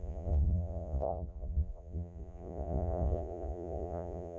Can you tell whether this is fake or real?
fake